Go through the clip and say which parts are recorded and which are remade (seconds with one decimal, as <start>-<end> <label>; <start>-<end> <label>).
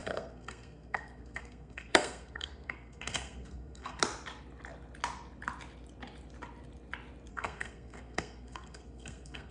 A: 0.0-4.0 remade; 4.0-7.3 recorded; 7.3-9.5 remade